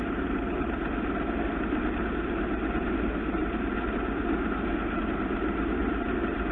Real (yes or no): yes